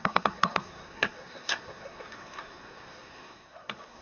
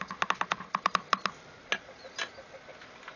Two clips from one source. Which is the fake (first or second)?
first